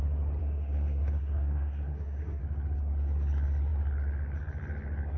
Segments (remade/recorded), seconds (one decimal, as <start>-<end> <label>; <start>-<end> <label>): 0.0-0.4 recorded; 0.4-2.4 remade; 2.4-5.2 recorded